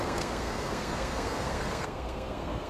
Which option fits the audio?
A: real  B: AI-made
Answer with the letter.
B